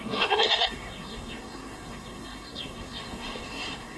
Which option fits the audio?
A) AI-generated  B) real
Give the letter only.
A